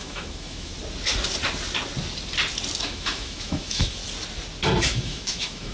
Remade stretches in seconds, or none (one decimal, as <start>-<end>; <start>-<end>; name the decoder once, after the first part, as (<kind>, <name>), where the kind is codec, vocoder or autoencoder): 0.0-0.7 (autoencoder, DAC-VAE); 2.8-4.0; 4.8-5.7